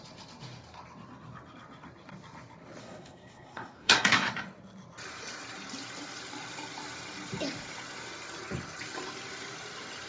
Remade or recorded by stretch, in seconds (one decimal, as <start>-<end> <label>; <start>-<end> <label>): 0.0-2.8 recorded; 2.8-4.3 remade; 4.3-10.1 recorded